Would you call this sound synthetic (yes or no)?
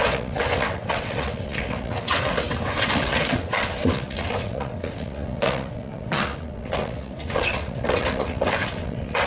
yes